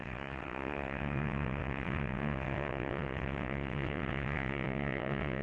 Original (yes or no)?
no